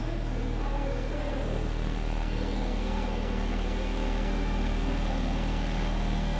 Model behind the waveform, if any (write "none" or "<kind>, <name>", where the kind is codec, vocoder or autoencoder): codec, SNAC